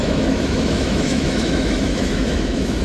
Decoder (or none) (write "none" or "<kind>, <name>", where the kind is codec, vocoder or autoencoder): autoencoder, DAC-VAE